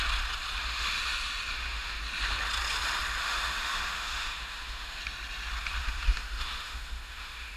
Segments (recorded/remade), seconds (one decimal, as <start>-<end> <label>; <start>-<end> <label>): 0.0-0.6 recorded; 0.6-1.0 remade; 1.0-1.5 recorded; 1.5-2.0 remade; 2.0-3.2 recorded; 3.2-5.0 remade; 5.0-5.8 recorded; 5.8-7.6 remade